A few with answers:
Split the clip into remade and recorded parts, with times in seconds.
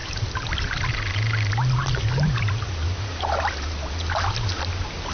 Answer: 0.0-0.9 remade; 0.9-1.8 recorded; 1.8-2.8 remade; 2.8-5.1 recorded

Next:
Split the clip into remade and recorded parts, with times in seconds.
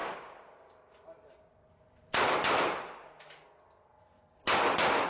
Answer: 0.0-5.1 recorded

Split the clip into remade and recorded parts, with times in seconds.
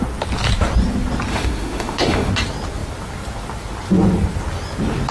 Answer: 0.0-1.3 recorded; 1.3-2.3 remade; 2.3-5.1 recorded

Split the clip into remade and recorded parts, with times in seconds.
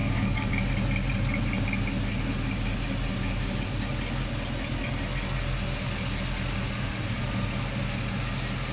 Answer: 0.0-0.5 remade; 0.5-8.7 recorded